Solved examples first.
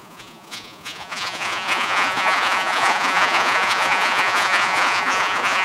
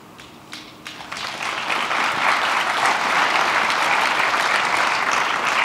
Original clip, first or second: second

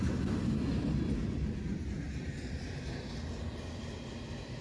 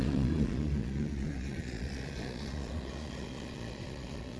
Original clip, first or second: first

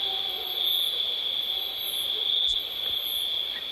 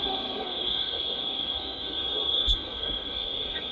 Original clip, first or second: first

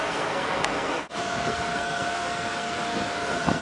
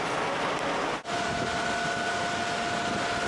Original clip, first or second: second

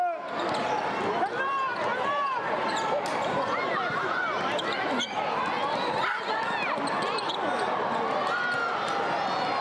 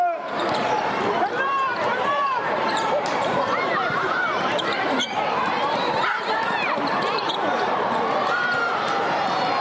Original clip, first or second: first